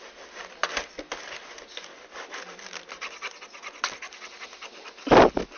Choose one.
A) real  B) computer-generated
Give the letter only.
A